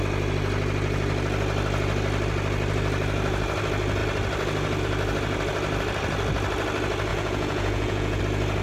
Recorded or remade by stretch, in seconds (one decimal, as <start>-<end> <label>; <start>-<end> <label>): 0.0-7.1 recorded; 7.1-8.2 remade; 8.2-8.6 recorded